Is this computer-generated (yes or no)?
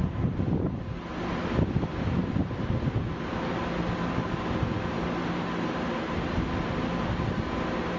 no